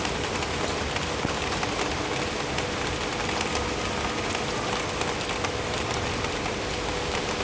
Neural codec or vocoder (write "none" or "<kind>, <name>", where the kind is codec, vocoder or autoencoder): none